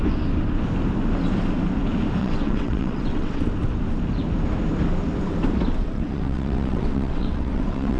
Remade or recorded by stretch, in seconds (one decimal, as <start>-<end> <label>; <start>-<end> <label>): 0.0-2.2 recorded; 2.2-3.4 remade; 3.4-5.8 recorded; 5.8-8.0 remade